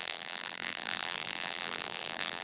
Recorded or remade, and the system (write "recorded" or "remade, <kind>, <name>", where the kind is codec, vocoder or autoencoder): remade, vocoder, BigVGAN v2